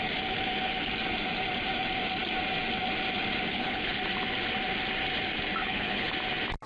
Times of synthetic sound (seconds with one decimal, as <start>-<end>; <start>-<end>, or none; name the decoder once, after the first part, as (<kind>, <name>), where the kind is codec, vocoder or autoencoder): 3.5-4.0 (codec, HILCodec); 5.6-6.1